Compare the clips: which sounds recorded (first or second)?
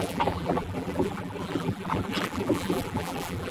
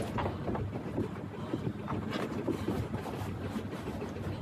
second